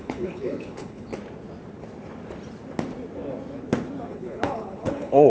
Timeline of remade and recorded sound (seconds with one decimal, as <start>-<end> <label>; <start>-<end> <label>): 0.0-1.1 remade; 1.1-4.1 recorded; 4.1-5.3 remade